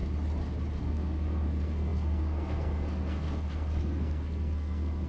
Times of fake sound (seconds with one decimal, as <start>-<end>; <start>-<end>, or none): 0.8-5.1